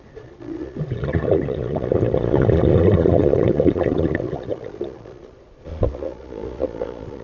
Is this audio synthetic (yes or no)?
yes